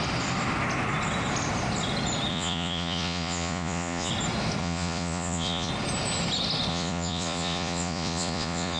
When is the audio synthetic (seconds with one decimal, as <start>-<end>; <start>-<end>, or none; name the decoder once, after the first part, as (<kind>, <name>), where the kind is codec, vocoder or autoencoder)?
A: 2.3-4.1 (vocoder, Vocos); 4.6-5.7; 6.7-8.8